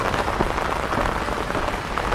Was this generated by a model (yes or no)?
no